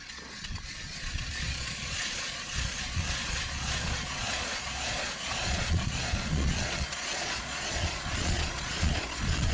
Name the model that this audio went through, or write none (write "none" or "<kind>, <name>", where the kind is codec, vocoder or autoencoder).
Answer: vocoder, Vocos